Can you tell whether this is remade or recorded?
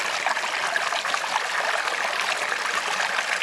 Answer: recorded